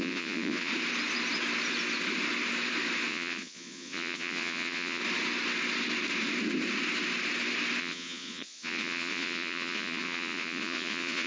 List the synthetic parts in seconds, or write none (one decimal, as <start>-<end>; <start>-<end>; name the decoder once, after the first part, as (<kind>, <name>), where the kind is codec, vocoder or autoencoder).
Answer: 0.0-0.7 (vocoder, Vocos); 3.1-5.0; 7.8-11.3